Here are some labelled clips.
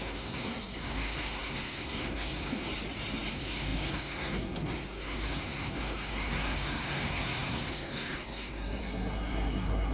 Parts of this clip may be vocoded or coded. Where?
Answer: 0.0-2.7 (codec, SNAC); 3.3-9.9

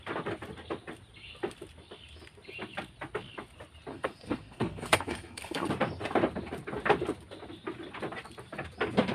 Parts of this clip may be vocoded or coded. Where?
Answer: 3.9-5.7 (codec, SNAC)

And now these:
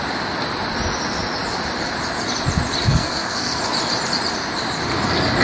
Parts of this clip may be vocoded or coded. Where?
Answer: 2.9-3.6 (codec, SNAC)